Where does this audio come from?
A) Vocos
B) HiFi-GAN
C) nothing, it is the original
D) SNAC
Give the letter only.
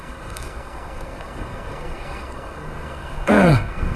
D